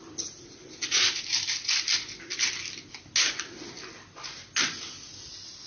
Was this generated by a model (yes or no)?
no